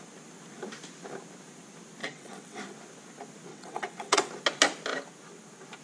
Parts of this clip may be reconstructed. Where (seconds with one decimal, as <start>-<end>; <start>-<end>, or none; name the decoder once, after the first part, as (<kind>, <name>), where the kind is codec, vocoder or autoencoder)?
2.0-2.6 (vocoder, WaveNeXt); 3.5-4.3